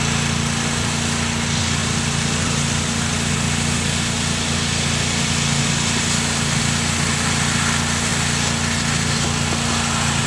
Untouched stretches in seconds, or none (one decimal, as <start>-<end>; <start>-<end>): 0.0-1.8; 6.6-10.3